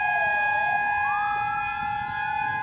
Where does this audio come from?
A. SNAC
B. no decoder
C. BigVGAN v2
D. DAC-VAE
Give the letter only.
B